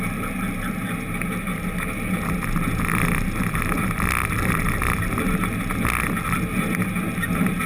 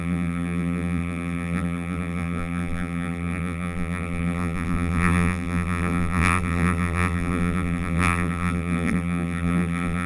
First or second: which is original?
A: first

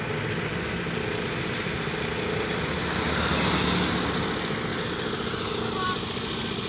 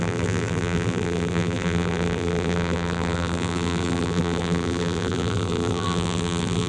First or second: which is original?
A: first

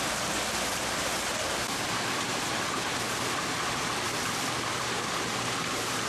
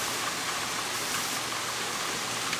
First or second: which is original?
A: second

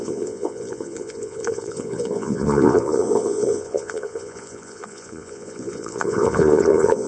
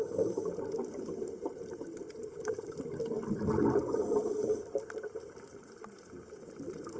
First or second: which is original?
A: second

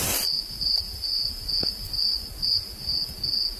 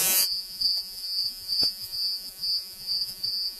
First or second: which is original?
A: first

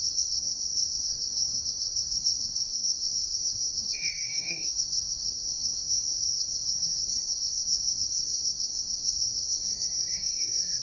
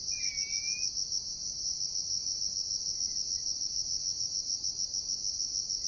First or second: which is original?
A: second